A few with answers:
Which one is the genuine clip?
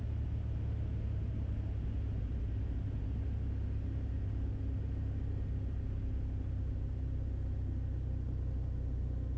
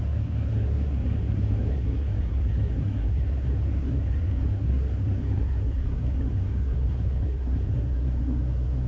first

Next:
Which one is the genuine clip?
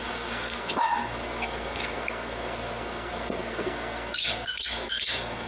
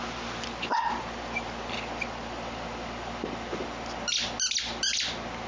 second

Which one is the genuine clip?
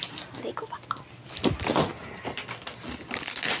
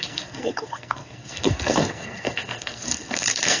first